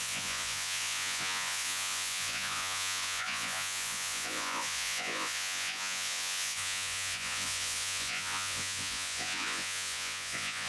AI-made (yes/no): yes